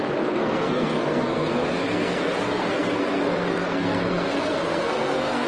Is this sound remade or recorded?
remade